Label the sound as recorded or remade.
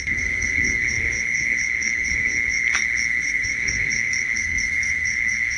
remade